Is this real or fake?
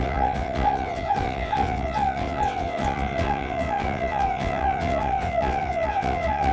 fake